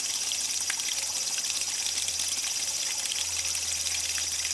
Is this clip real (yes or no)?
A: yes